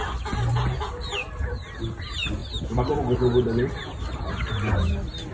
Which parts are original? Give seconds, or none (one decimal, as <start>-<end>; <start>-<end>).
0.0-5.3

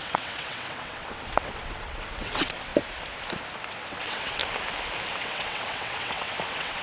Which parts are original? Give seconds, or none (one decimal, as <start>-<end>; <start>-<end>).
2.7-3.7; 4.4-5.1

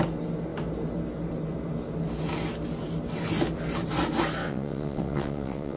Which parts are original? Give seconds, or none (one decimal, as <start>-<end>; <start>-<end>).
0.0-4.4

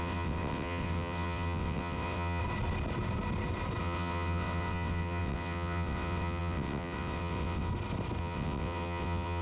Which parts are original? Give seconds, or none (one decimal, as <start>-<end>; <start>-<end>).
2.4-3.8; 7.7-8.2

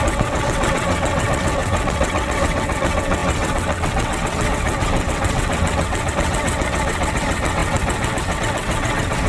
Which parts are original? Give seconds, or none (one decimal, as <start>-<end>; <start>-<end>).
none

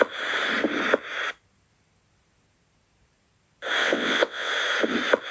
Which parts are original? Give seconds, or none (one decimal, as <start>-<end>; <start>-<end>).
0.0-3.8; 4.5-5.3

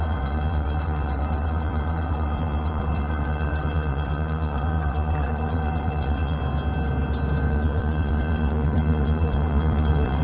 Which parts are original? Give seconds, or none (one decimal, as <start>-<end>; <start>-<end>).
6.4-7.5